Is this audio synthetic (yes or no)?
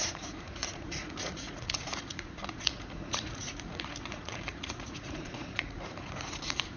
yes